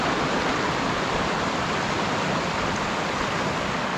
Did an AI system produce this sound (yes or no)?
no